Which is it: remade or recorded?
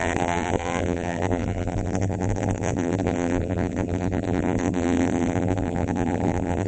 remade